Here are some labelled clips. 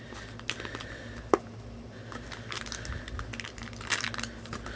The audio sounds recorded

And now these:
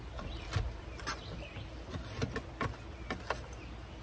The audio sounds recorded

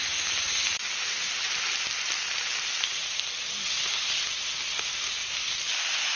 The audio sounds recorded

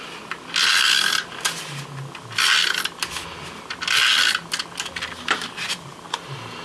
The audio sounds recorded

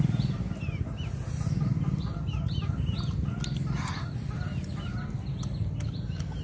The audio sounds recorded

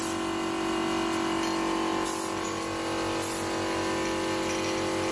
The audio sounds recorded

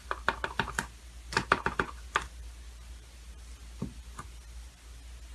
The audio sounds recorded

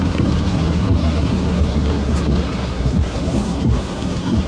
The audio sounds remade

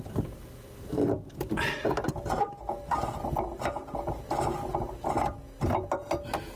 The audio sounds recorded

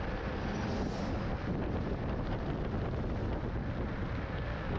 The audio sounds recorded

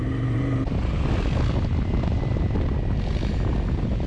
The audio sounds recorded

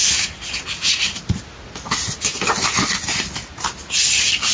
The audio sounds recorded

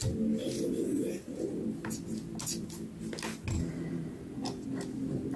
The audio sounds recorded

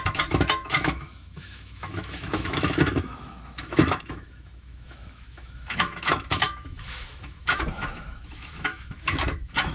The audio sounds remade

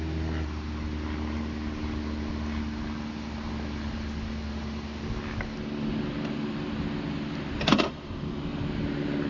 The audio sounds recorded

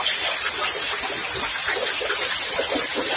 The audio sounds remade